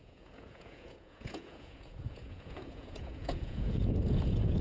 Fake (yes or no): yes